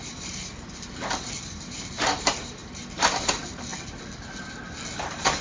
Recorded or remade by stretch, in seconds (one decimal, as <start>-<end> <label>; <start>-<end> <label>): 0.0-3.7 remade; 3.7-4.9 recorded; 4.9-5.4 remade